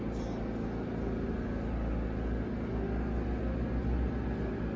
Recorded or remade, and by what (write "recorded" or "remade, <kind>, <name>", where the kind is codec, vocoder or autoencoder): recorded